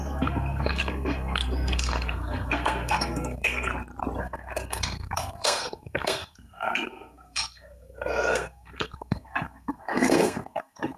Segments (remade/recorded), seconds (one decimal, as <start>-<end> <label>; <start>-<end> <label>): 0.0-3.7 remade; 3.7-4.2 recorded; 4.2-11.0 remade